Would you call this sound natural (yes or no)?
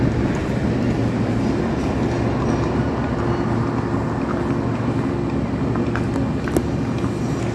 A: yes